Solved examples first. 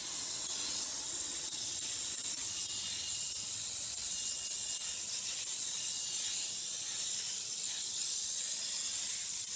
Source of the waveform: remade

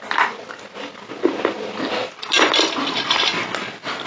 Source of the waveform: recorded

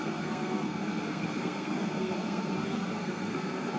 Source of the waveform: remade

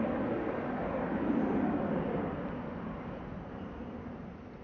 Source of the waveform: recorded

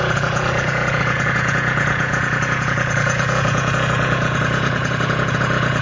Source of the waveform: remade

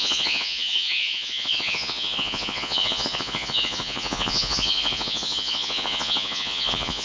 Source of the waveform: remade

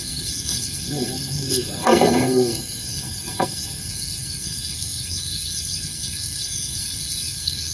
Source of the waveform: remade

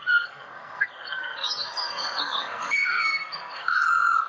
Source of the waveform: remade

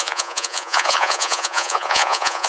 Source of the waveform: remade